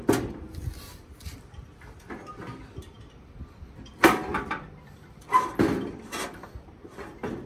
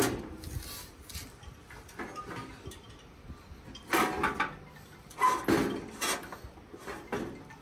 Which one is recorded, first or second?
second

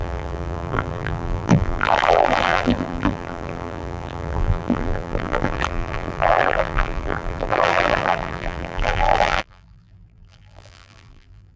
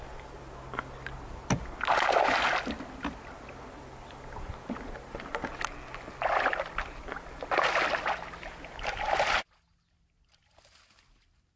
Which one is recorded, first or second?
second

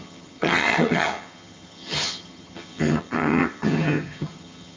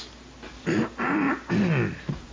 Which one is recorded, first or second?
second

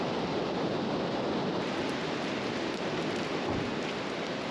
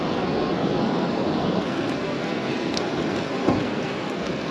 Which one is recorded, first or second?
first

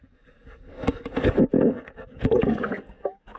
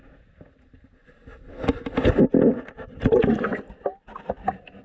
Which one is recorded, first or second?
second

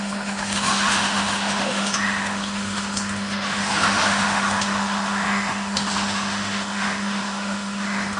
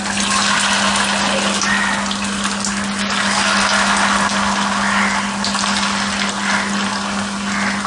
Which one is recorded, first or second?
second